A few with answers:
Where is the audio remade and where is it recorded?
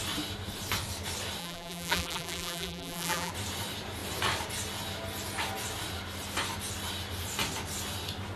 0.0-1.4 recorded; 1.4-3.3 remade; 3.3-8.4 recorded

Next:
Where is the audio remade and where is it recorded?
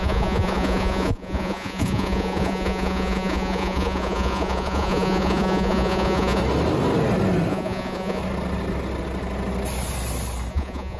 0.0-6.4 remade; 6.4-7.5 recorded; 7.5-8.2 remade; 8.2-10.5 recorded; 10.5-11.0 remade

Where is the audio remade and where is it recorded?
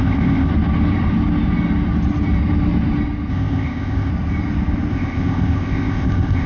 0.0-0.5 remade; 0.5-3.3 recorded; 3.3-4.1 remade; 4.1-4.9 recorded; 4.9-6.5 remade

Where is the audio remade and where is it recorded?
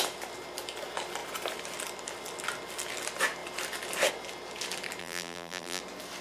0.0-5.0 recorded; 5.0-5.8 remade; 5.8-6.2 recorded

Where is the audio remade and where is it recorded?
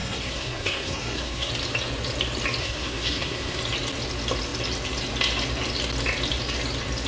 0.0-1.5 remade; 1.5-2.6 recorded; 2.6-3.6 remade; 3.6-7.1 recorded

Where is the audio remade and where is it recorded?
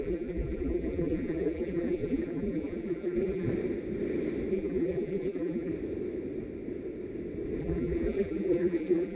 0.0-3.5 remade; 3.5-4.5 recorded; 4.5-5.7 remade; 5.7-7.6 recorded; 7.6-9.2 remade